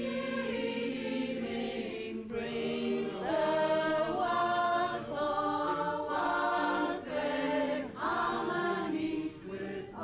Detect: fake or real real